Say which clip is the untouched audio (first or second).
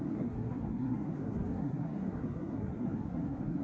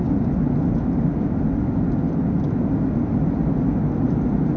second